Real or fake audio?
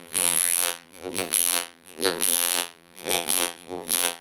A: fake